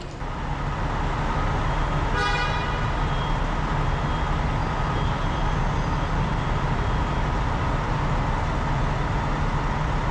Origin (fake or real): real